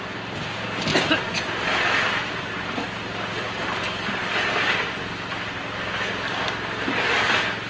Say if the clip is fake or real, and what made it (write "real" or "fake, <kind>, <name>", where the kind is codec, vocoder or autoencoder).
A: real